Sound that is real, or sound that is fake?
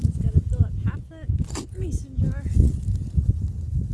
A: real